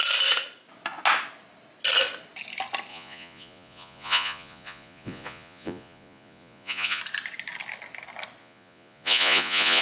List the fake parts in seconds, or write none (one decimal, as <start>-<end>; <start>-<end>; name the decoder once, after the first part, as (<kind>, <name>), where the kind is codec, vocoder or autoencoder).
2.9-7.0 (vocoder, Vocos); 8.4-9.8